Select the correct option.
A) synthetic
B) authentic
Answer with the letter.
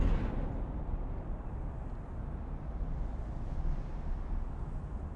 B